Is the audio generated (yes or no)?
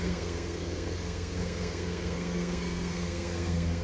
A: yes